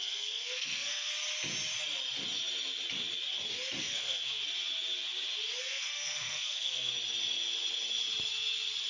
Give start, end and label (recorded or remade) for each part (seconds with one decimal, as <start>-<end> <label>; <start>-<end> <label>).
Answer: 0.0-1.1 remade; 1.1-3.8 recorded; 3.8-4.4 remade; 4.4-5.6 recorded; 5.6-6.9 remade; 6.9-8.9 recorded